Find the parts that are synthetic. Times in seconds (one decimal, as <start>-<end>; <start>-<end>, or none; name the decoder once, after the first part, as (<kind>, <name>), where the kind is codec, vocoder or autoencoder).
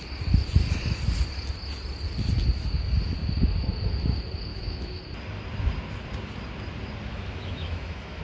4.5-5.0 (autoencoder, DAC-VAE); 7.1-8.2